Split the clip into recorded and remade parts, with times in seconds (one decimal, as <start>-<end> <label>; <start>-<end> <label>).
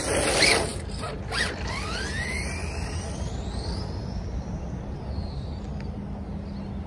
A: 0.0-6.9 recorded